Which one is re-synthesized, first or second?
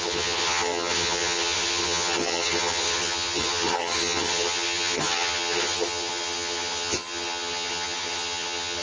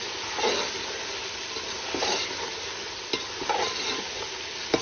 first